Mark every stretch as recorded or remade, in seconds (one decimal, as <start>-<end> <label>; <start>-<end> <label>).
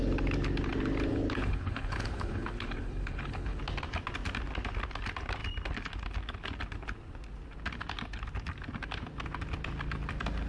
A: 0.0-1.4 recorded; 1.4-3.6 remade; 3.6-10.5 recorded